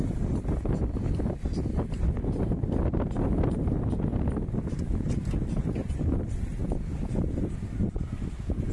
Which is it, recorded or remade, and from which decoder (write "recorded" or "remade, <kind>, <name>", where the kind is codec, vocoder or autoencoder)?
recorded